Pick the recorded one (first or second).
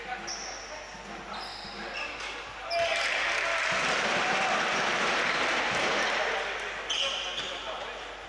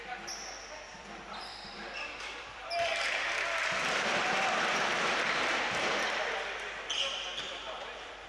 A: first